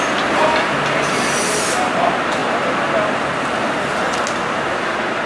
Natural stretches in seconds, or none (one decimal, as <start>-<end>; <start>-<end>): 0.0-5.3